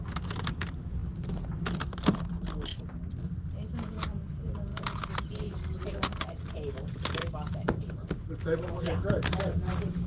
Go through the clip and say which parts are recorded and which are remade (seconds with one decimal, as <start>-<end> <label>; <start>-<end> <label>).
0.0-1.0 recorded; 1.0-2.3 remade; 2.3-2.7 recorded; 2.7-3.9 remade; 3.9-4.7 recorded; 4.7-5.9 remade; 5.9-7.2 recorded; 7.2-8.3 remade; 8.3-10.1 recorded

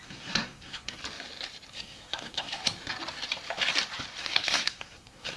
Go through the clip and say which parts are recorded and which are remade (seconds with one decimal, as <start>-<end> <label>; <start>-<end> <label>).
0.0-1.0 remade; 1.0-1.7 recorded; 1.7-2.6 remade; 2.6-4.2 recorded; 4.2-5.4 remade

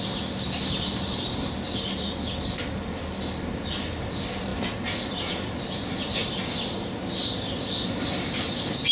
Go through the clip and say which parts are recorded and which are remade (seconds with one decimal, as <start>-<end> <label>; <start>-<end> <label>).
0.0-8.9 recorded

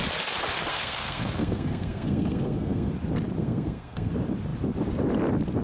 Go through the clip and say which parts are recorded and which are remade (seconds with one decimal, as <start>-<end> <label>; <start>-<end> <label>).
0.0-0.7 recorded; 0.7-2.9 remade; 2.9-3.4 recorded; 3.4-4.1 remade; 4.1-5.6 recorded